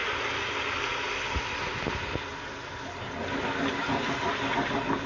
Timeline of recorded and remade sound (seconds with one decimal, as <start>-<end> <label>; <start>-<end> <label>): 0.0-5.1 recorded